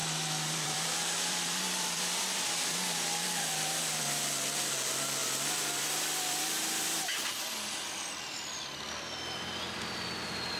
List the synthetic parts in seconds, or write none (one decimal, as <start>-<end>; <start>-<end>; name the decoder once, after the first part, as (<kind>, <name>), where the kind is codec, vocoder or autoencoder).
0.0-4.7 (vocoder, BigVGAN v2); 5.2-8.0